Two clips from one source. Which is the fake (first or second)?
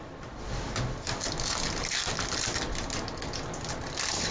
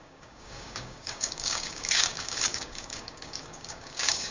second